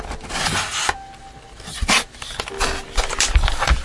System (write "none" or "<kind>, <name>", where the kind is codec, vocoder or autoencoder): none